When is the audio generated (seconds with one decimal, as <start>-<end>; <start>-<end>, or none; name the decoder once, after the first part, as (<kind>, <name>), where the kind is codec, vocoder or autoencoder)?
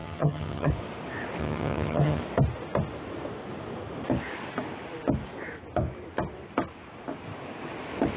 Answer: 0.0-0.7 (vocoder, HiFi-GAN); 1.4-2.2